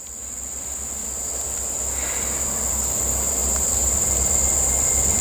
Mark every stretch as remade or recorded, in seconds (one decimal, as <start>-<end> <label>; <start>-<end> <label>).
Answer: 0.0-1.0 recorded; 1.0-2.9 remade; 2.9-3.4 recorded; 3.4-4.3 remade; 4.3-5.2 recorded